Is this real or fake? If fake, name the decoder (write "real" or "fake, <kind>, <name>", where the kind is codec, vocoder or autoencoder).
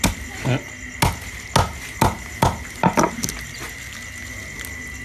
real